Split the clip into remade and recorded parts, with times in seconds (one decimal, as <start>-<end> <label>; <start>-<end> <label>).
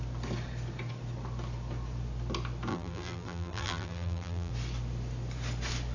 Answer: 0.0-2.7 recorded; 2.7-4.5 remade; 4.5-5.9 recorded